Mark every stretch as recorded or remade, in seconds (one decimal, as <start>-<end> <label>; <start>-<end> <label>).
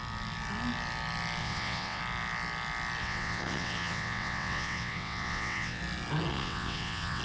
0.0-1.4 recorded; 1.4-2.0 remade; 2.0-3.0 recorded; 3.0-5.8 remade; 5.8-6.3 recorded; 6.3-7.2 remade